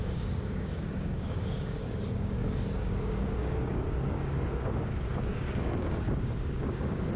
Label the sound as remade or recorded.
remade